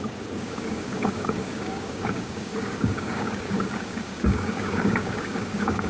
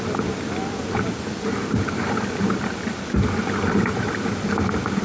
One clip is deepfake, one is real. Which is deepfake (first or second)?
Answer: first